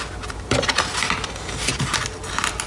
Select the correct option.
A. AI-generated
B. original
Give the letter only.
B